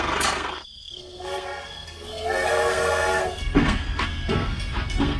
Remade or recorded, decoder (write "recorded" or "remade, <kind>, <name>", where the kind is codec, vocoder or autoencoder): remade, codec, SNAC